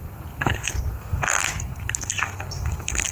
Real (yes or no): no